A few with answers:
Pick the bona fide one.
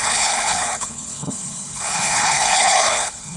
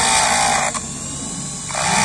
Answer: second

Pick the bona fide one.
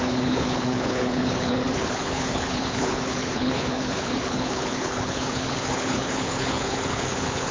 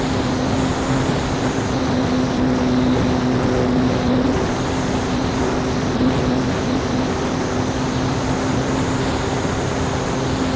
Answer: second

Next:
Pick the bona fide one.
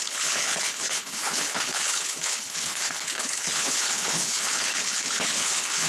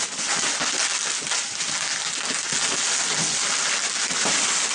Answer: second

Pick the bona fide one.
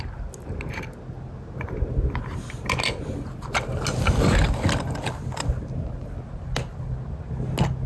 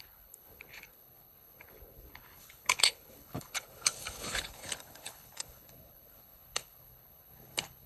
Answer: first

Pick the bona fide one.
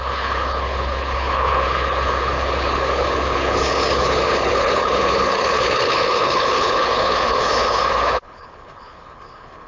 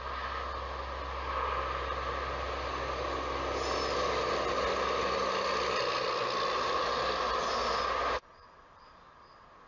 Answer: second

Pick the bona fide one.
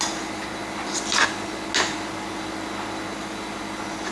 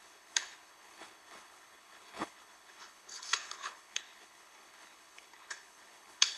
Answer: first